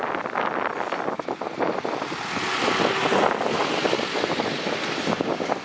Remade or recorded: recorded